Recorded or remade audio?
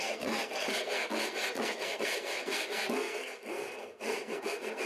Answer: remade